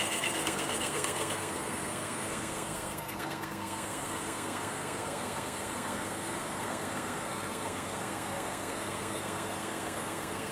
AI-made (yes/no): yes